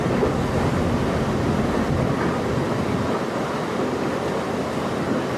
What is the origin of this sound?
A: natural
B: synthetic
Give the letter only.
A